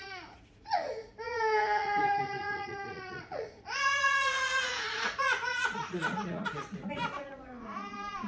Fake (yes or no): yes